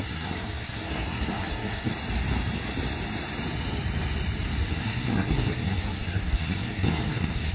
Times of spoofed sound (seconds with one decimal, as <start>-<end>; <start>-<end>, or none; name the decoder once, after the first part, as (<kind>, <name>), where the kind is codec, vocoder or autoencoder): 0.0-1.9 (codec, SNAC); 4.7-7.5